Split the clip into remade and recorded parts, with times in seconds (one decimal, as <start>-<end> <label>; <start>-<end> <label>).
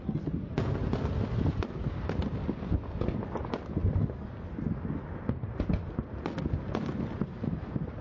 0.0-8.0 recorded